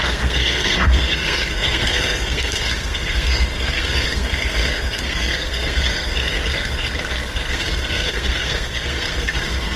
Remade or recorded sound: remade